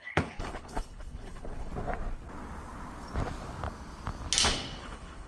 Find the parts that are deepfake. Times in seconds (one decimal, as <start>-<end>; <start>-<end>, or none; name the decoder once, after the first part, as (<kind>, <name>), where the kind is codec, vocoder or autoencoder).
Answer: 0.0-1.7 (codec, HILCodec); 4.8-5.3